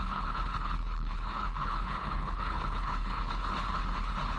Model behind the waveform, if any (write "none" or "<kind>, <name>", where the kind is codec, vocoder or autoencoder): codec, HILCodec